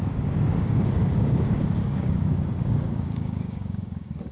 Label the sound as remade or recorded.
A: remade